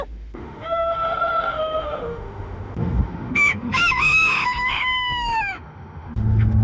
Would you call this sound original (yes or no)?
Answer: no